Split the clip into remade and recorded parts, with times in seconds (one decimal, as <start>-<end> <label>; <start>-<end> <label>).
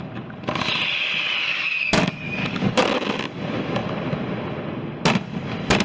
0.0-1.5 recorded; 1.5-2.9 remade; 2.9-5.8 recorded